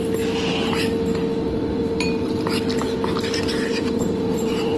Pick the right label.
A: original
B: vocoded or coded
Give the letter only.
A